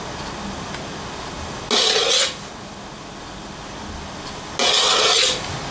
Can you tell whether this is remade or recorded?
recorded